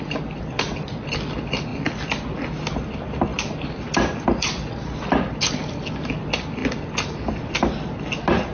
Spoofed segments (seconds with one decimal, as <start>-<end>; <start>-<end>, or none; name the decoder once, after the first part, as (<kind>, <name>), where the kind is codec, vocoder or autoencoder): none